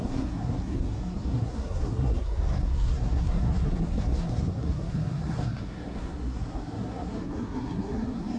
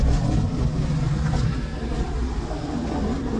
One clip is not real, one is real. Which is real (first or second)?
second